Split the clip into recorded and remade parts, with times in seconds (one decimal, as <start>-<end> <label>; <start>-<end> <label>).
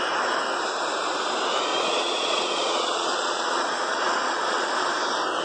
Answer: 0.0-1.7 recorded; 1.7-4.7 remade; 4.7-5.4 recorded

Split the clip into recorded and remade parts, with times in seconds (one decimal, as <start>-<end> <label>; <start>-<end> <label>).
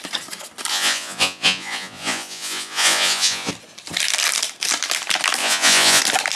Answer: 0.0-0.7 recorded; 0.7-3.5 remade; 3.5-5.4 recorded; 5.4-6.0 remade; 6.0-6.4 recorded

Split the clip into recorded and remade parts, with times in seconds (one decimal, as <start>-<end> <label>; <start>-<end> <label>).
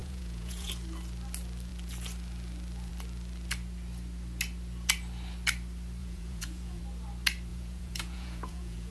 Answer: 0.0-0.7 remade; 0.7-6.0 recorded; 6.0-6.8 remade; 6.8-7.5 recorded; 7.5-8.9 remade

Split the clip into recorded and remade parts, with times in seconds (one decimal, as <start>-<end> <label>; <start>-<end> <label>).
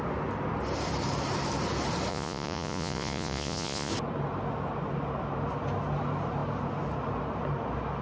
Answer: 0.0-2.1 recorded; 2.1-3.9 remade; 3.9-8.0 recorded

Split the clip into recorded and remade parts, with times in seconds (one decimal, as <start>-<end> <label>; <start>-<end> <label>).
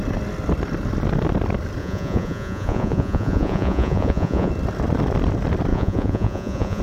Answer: 0.0-1.8 recorded; 1.8-4.5 remade; 4.5-5.7 recorded; 5.7-6.8 remade